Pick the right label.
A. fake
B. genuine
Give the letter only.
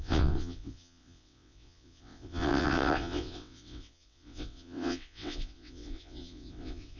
A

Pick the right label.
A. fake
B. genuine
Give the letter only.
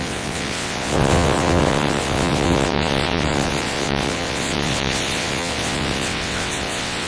A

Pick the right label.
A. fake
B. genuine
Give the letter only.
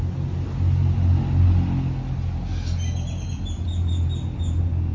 B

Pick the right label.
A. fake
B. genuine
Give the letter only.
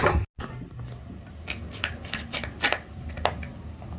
B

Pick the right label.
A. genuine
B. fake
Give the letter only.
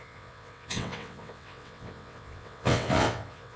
B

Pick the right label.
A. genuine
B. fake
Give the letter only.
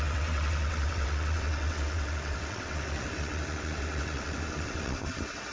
B